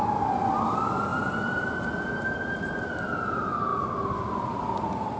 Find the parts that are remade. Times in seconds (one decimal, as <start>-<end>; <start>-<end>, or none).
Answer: none